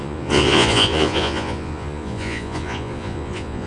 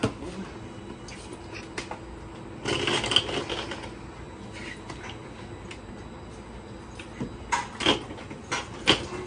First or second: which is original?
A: second